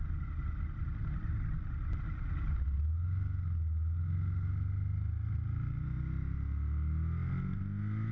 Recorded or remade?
recorded